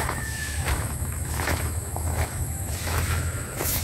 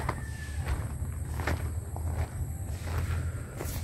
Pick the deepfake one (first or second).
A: first